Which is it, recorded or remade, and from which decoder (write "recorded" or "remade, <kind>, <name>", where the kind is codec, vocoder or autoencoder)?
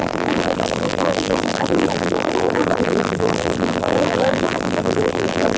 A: remade, vocoder, BigVGAN v2